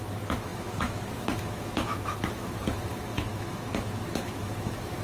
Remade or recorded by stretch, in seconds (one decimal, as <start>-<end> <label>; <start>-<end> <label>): 0.0-5.0 remade